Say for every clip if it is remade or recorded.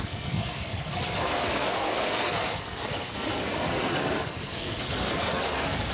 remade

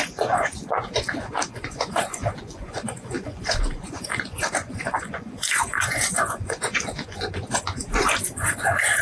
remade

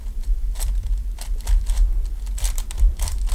remade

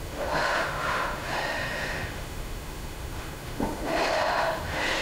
remade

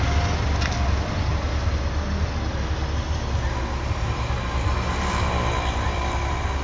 recorded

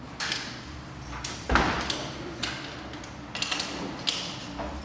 recorded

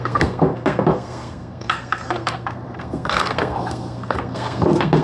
remade